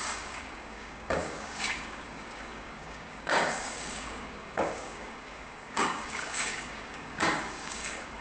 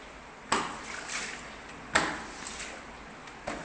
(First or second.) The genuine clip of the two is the second